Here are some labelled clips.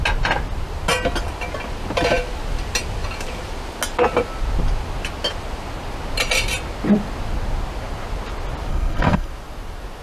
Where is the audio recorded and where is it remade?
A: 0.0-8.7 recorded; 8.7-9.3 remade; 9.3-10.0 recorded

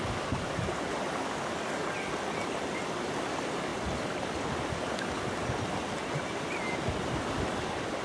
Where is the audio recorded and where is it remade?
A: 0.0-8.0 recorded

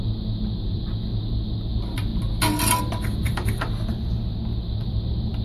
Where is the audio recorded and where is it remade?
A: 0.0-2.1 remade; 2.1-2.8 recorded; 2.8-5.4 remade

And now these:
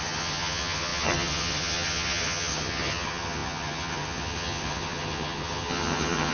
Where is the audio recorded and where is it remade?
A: 0.0-6.3 remade

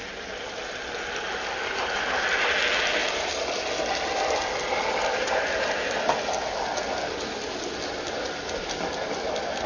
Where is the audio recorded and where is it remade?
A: 0.0-9.7 recorded

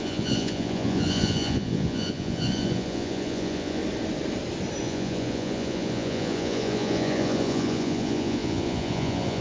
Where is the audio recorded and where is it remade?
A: 0.0-3.8 remade; 3.8-4.8 recorded; 4.8-9.4 remade

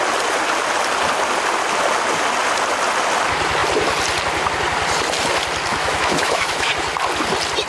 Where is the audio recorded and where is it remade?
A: 0.0-5.7 recorded; 5.7-6.7 remade; 6.7-7.7 recorded